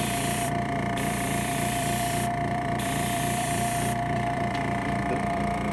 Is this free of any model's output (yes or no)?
no